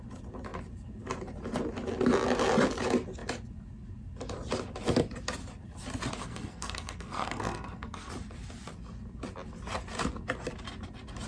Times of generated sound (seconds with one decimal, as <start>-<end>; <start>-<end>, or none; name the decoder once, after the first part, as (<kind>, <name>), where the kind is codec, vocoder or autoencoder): 6.2-8.1 (codec, SNAC)